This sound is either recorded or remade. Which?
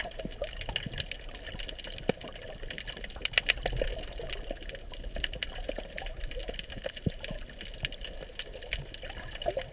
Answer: recorded